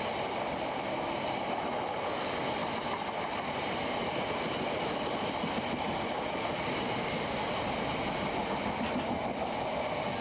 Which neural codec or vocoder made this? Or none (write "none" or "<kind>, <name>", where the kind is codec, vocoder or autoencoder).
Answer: none